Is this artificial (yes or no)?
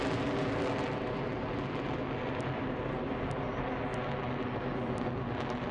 no